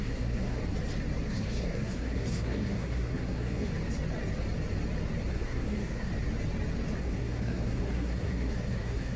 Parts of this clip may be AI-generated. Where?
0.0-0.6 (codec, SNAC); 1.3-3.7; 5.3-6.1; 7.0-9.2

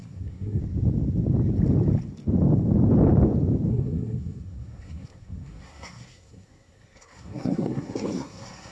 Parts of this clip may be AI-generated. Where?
0.0-0.6 (codec, SNAC); 3.7-8.7

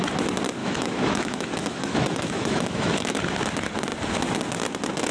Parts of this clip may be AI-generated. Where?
0.6-3.2 (autoencoder, DAC-VAE)

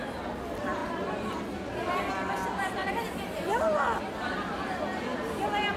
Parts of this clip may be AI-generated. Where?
none

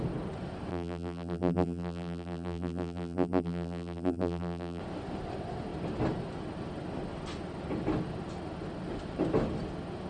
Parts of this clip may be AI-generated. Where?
0.7-4.8 (vocoder, BigVGAN v2)